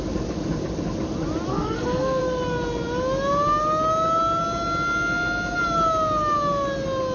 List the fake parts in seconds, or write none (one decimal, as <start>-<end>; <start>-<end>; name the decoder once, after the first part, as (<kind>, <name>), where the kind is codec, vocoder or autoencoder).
1.5-2.2 (codec, SNAC)